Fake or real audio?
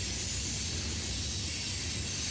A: real